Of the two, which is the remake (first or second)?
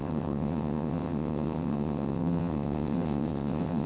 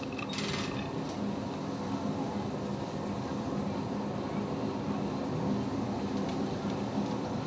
first